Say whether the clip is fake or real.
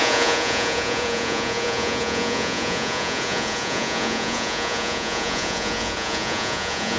fake